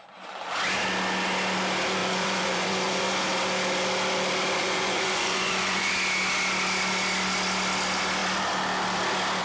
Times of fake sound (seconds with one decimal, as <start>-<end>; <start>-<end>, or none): 2.0-3.1; 4.6-5.9